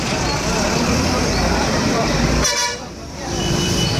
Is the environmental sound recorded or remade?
remade